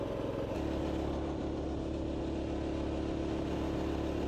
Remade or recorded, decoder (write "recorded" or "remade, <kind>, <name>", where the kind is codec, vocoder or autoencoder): recorded